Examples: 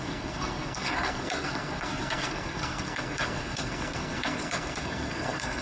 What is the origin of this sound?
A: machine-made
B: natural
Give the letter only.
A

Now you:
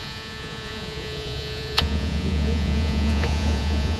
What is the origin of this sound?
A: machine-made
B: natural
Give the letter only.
A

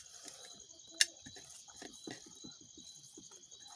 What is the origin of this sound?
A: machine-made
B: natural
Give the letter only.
B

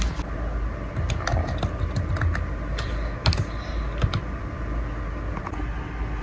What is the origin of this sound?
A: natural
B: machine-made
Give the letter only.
A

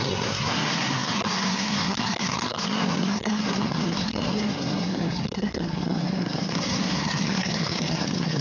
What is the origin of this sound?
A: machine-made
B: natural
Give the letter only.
A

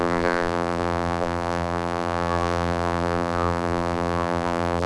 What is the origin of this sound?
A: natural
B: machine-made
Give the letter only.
B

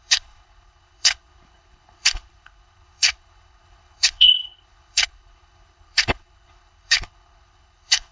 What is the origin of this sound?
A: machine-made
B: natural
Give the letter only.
A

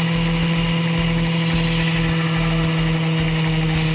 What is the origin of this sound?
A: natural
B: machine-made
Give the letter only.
A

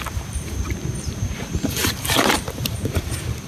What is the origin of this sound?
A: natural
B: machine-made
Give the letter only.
B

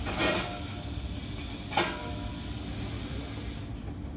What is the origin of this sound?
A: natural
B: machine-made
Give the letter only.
A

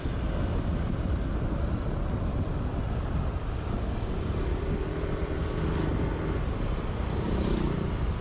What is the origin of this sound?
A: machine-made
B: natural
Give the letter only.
B